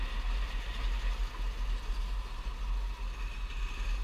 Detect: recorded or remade recorded